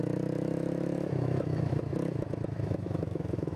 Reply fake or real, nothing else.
fake